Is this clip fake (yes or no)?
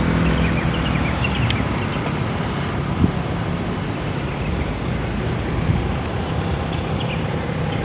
no